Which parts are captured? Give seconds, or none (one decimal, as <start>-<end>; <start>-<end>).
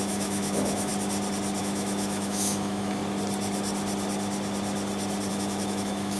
0.9-1.6; 3.0-5.3